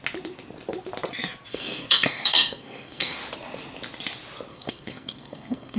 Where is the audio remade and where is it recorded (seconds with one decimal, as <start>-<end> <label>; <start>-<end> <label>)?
0.0-1.5 recorded; 1.5-3.2 remade; 3.2-4.5 recorded; 4.5-5.8 remade